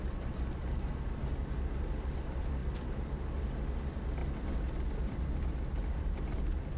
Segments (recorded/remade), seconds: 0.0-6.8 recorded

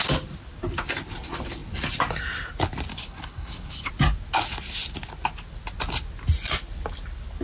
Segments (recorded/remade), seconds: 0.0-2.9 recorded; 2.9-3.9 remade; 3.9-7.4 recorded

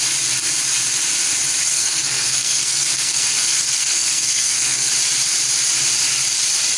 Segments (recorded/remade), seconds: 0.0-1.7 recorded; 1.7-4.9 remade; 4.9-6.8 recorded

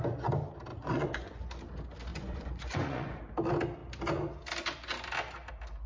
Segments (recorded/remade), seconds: 0.0-0.7 recorded; 0.7-1.4 remade; 1.4-2.1 recorded; 2.1-3.2 remade; 3.2-5.9 recorded